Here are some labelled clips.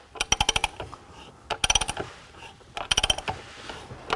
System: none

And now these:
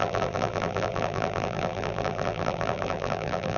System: vocoder, BigVGAN v2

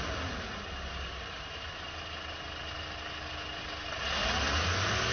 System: none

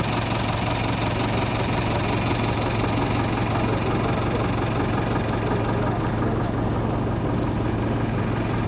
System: none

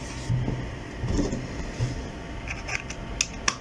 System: none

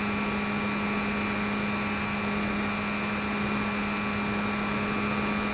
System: none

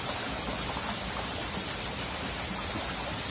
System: none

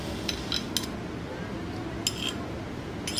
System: none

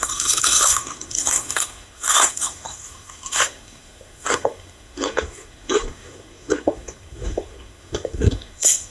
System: codec, SNAC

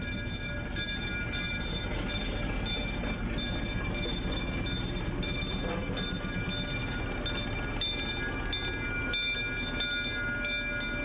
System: none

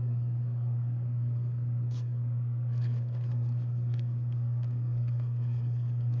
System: codec, SNAC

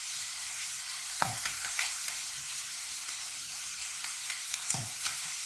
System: codec, SNAC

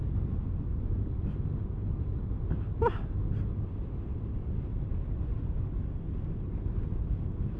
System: none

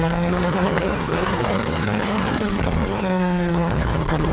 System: codec, SNAC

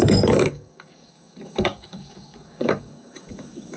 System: codec, DAC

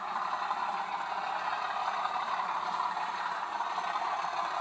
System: none